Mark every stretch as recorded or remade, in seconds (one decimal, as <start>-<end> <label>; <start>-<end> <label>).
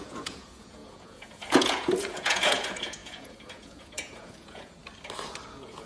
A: 0.0-4.8 remade; 4.8-5.5 recorded; 5.5-5.9 remade